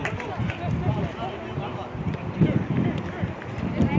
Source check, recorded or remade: recorded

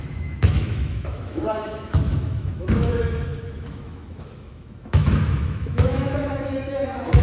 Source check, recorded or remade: remade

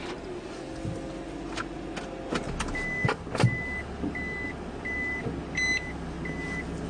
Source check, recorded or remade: recorded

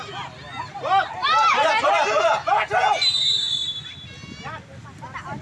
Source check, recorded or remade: recorded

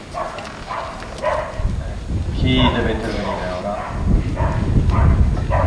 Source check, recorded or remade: recorded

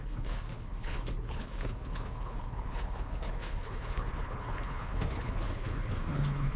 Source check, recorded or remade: remade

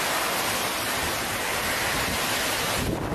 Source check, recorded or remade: recorded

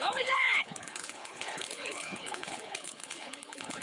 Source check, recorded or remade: remade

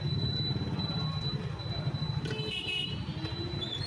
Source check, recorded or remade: recorded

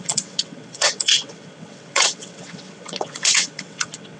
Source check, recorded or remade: remade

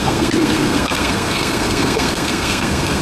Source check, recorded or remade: remade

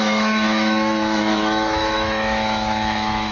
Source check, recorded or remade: remade